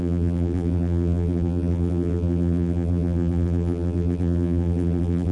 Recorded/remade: remade